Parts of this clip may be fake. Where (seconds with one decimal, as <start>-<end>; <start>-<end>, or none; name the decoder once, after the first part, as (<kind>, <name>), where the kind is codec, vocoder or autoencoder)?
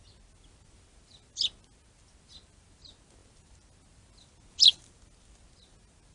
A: none